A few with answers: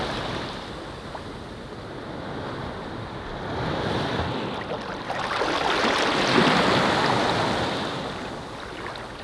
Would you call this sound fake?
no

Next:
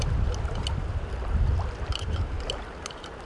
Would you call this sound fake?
no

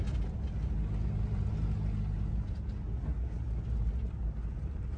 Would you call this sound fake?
no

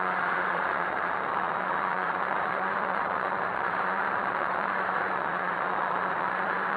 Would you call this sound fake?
yes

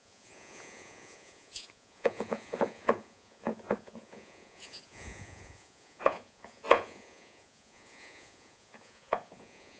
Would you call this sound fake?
yes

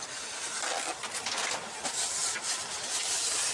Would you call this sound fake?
no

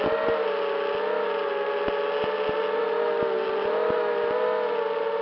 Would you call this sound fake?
no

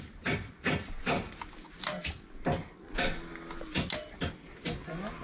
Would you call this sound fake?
no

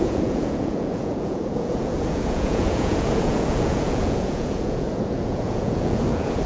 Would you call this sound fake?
yes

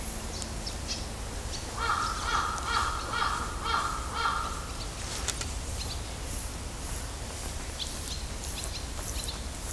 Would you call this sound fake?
no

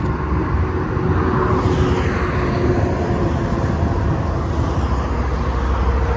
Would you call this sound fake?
no